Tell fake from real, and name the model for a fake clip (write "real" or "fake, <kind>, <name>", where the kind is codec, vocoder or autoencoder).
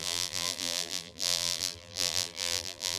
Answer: fake, vocoder, BigVGAN v2